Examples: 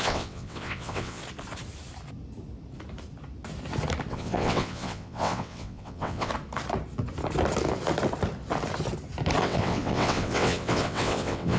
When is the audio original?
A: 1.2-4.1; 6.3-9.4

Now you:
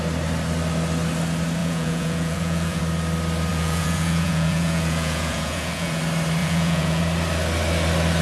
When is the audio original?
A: 0.0-1.6; 2.8-3.5; 6.0-6.4; 7.0-8.2

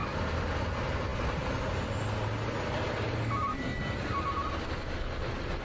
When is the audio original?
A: 0.0-5.6

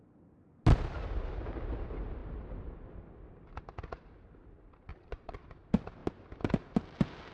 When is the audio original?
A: 0.0-4.9; 5.4-7.3